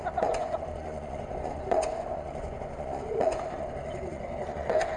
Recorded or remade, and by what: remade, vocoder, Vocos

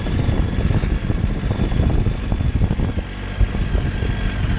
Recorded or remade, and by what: recorded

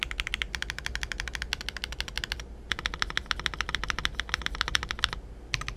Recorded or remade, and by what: recorded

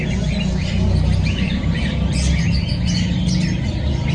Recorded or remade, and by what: recorded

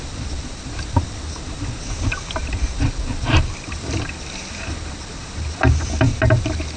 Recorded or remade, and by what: recorded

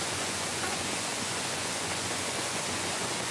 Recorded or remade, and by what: remade, vocoder, Vocos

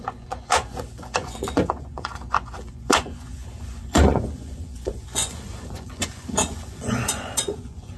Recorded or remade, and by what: remade, vocoder, Vocos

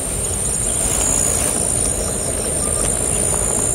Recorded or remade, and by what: recorded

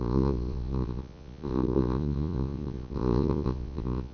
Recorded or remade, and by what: remade, vocoder, Vocos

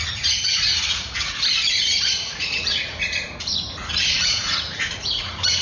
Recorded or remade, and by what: remade, vocoder, Vocos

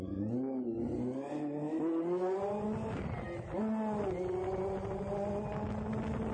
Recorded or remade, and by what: recorded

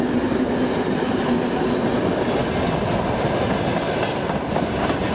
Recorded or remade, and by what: recorded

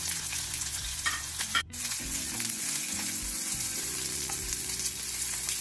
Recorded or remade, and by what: remade, vocoder, Vocos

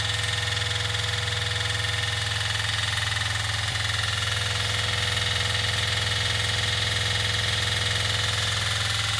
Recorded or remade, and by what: recorded